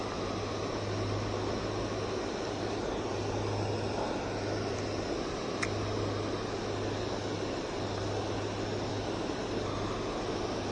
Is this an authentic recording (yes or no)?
yes